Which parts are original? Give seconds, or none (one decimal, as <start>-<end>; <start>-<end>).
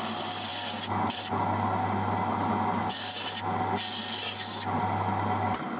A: 0.0-5.8